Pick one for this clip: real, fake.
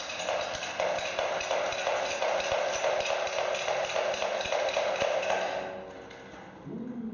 real